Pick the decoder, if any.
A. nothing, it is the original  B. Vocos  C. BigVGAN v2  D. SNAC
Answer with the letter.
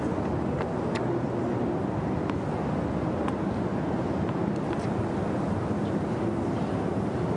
A